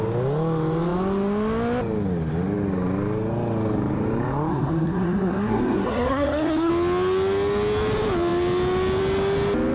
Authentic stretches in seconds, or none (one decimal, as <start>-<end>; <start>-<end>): 0.0-4.5; 6.7-9.7